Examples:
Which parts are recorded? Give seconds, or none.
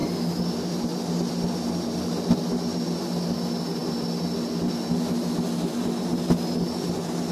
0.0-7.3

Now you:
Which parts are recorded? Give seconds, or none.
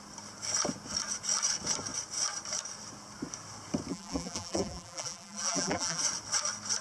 0.0-3.9; 6.0-6.8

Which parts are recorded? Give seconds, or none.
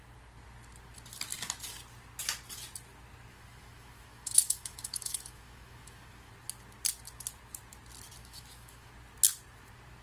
0.0-3.3; 6.3-8.2; 8.9-10.0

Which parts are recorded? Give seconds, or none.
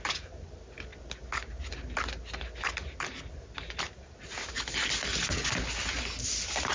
0.0-6.7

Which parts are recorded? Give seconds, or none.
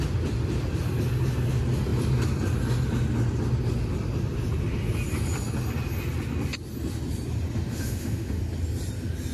0.0-7.7; 8.4-9.3